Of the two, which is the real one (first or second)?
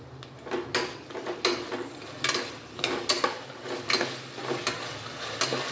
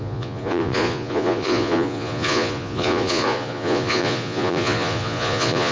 first